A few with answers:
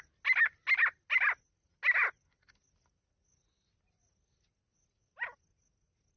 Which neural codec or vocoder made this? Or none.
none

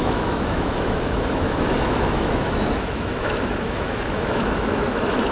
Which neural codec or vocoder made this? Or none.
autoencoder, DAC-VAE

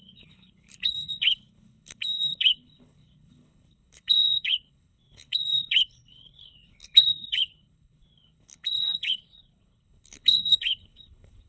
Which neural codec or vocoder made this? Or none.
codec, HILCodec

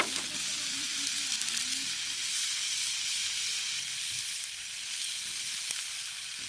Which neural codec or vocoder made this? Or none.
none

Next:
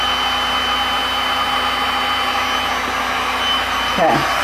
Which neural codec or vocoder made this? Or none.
none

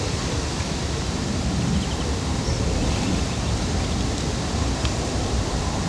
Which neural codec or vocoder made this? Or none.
none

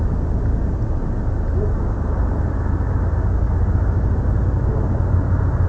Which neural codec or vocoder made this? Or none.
none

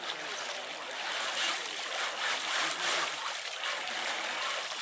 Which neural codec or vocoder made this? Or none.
none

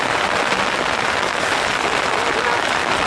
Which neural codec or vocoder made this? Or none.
none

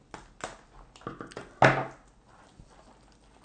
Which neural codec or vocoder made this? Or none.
none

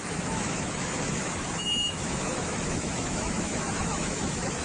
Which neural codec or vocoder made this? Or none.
autoencoder, DAC-VAE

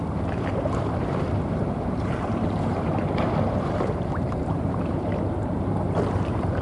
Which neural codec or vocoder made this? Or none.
vocoder, BigVGAN v2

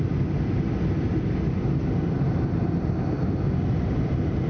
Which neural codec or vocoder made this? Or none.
none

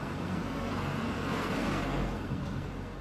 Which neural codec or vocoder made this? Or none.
codec, SNAC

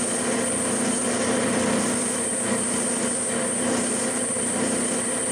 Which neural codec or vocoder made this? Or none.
none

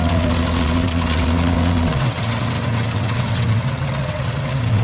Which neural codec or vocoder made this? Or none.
vocoder, WaveNeXt